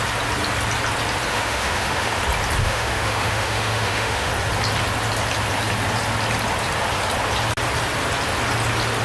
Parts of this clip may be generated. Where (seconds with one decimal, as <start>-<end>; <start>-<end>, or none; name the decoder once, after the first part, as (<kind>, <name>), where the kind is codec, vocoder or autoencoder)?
1.3-2.2 (autoencoder, DAC-VAE); 2.6-4.3